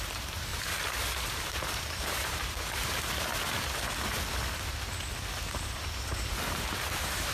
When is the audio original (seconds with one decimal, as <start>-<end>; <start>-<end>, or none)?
0.5-1.3; 3.3-5.5